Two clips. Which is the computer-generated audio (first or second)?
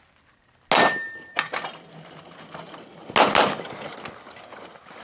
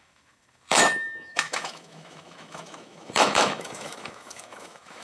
second